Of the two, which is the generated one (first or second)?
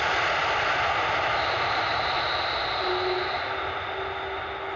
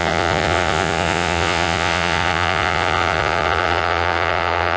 second